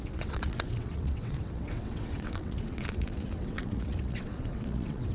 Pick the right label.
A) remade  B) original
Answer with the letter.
A